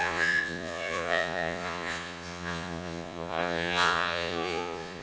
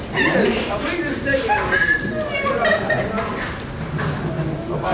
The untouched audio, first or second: second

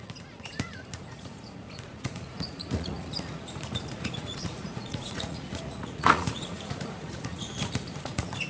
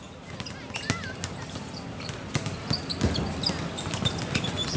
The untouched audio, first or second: second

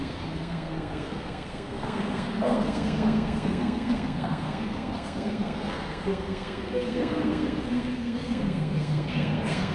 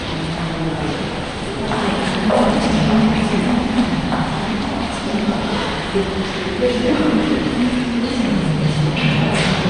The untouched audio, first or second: second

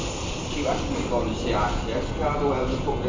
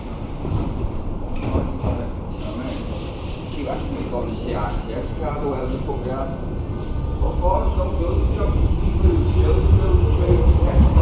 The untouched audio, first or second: first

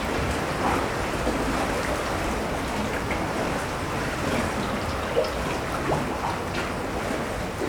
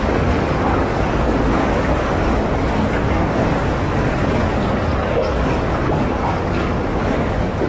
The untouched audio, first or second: first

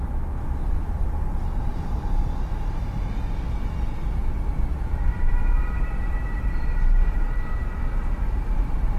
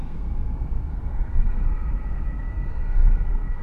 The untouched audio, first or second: first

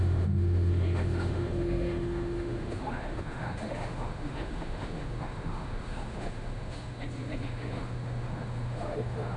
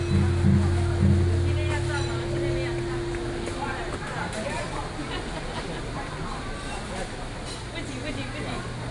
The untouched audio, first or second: second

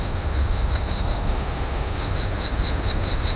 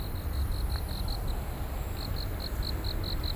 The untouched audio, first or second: second